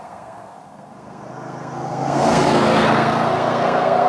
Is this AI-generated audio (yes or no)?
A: yes